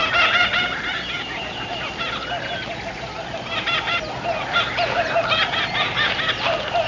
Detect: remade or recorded recorded